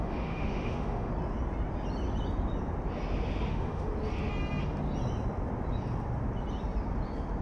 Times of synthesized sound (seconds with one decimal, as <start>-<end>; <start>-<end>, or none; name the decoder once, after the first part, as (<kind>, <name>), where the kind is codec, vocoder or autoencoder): 0.0-1.1 (autoencoder, DAC-VAE); 3.5-3.9